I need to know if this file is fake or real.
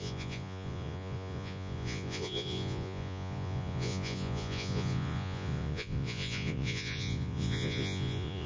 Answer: fake